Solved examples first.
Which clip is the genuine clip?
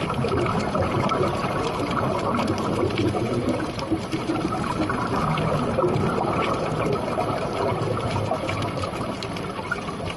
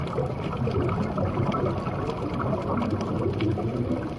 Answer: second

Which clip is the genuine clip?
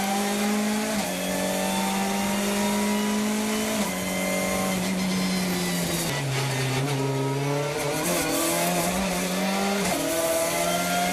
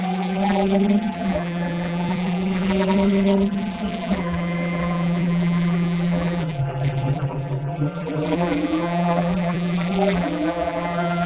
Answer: first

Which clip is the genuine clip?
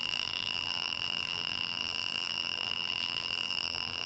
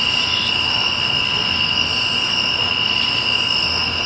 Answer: second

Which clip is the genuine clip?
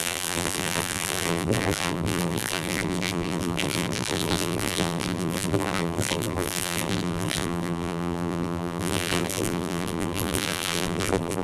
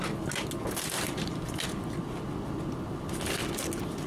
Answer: second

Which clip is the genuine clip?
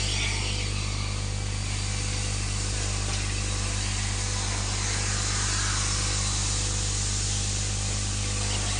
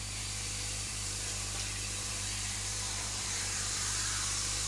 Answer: first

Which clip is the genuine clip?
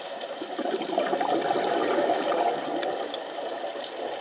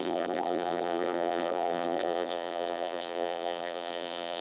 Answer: first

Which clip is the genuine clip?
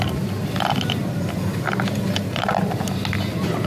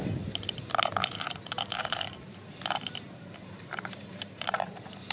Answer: first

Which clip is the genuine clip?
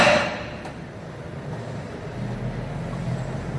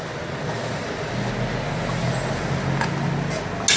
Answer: second